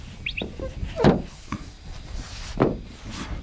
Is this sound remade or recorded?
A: recorded